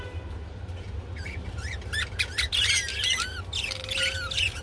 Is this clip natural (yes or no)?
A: yes